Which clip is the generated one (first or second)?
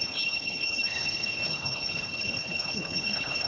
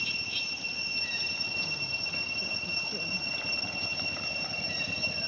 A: first